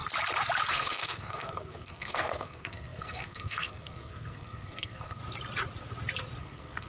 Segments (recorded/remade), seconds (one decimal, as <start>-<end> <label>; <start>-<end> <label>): 0.0-0.7 recorded; 0.7-5.2 remade; 5.2-6.4 recorded; 6.4-6.9 remade